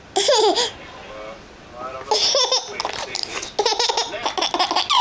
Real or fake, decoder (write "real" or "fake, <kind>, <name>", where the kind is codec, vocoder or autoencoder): real